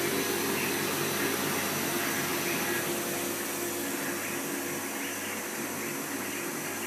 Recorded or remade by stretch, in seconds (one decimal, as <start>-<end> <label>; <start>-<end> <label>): 0.0-6.9 recorded